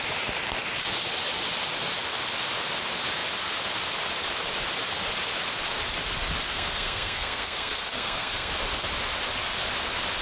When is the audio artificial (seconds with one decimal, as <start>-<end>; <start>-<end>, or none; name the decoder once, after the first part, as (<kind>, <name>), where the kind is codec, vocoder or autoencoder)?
6.5-8.5 (codec, SNAC)